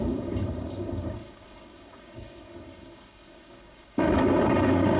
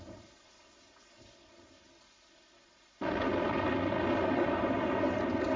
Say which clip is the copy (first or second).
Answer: first